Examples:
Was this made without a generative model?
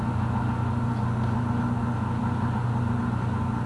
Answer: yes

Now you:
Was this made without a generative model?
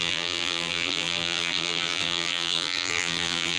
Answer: no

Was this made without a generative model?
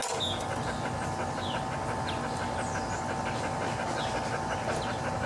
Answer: yes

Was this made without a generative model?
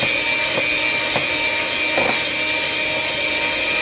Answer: yes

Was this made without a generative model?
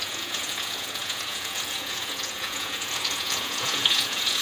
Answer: no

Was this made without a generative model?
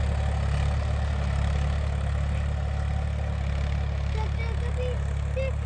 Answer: yes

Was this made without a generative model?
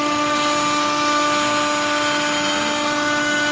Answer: yes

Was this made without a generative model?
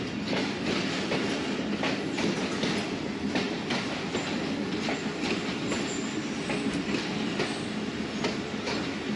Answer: yes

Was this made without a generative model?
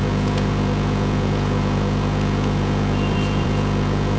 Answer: no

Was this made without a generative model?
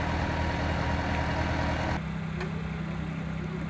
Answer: yes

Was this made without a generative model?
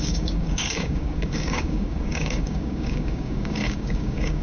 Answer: no